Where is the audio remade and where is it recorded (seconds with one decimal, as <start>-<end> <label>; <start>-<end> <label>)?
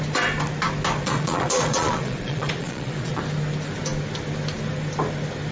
0.0-1.0 recorded; 1.0-3.2 remade; 3.2-5.5 recorded